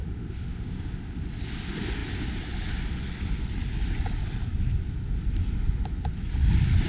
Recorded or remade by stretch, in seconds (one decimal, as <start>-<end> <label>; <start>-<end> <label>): 0.0-1.2 remade; 1.2-6.9 recorded